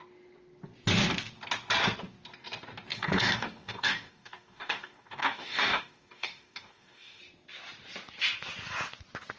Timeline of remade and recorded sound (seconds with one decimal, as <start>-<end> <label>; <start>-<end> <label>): 0.0-2.9 recorded; 2.9-7.2 remade; 7.2-9.4 recorded